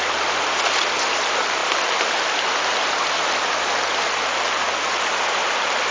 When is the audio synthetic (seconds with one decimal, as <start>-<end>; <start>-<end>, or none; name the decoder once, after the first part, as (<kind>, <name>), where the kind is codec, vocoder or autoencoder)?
none